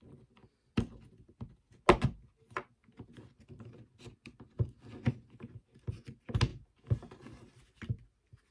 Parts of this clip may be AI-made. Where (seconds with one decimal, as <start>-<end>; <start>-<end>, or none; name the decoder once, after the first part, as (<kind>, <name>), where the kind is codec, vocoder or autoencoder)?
none